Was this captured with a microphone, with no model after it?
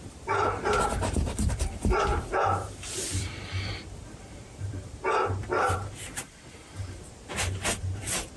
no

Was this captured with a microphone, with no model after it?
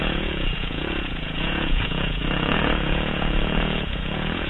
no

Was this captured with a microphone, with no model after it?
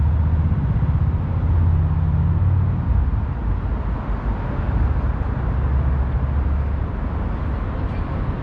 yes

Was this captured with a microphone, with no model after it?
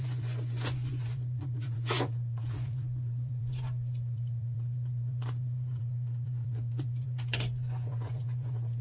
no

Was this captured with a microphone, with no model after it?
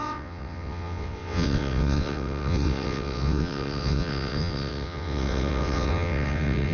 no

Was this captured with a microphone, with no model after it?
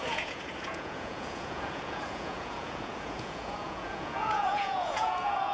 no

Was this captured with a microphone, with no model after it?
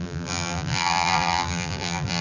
no